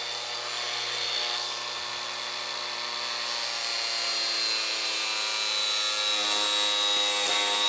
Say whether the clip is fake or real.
real